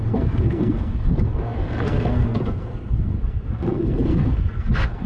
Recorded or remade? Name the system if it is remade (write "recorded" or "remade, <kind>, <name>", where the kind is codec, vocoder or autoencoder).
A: remade, codec, SNAC